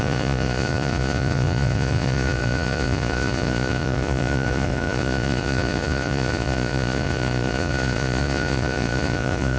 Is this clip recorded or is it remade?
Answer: remade